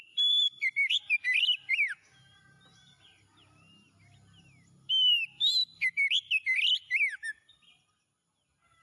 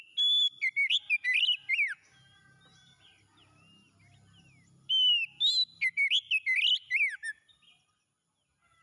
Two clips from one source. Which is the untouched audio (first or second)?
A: second